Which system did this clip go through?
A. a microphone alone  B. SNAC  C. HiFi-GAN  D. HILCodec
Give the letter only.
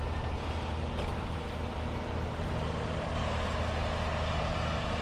A